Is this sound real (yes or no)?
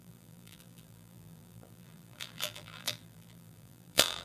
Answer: no